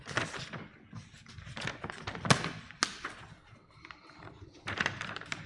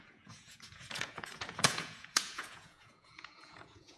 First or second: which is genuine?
first